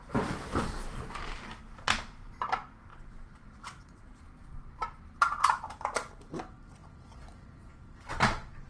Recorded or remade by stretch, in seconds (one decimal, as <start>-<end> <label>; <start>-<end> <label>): 0.0-2.9 recorded; 2.9-4.2 remade; 4.2-8.7 recorded